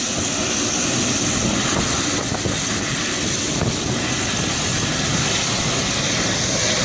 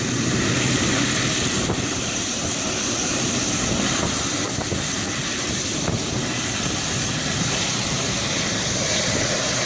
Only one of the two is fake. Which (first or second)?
second